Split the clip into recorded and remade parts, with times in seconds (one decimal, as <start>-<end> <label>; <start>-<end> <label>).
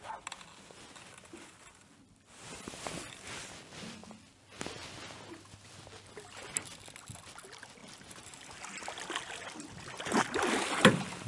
0.0-7.8 recorded; 7.8-8.5 remade; 8.5-11.3 recorded